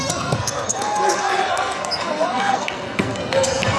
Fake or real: fake